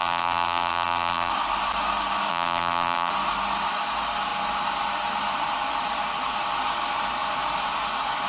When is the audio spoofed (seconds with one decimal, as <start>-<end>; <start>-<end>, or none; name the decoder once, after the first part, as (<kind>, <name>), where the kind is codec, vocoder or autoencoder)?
0.0-1.3 (vocoder, BigVGAN v2); 2.3-3.1